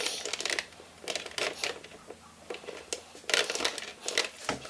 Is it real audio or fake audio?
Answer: real